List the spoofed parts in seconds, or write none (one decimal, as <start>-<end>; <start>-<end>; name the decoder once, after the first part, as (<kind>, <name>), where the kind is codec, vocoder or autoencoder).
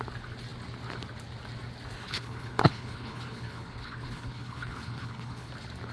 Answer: 2.0-5.5 (codec, HILCodec)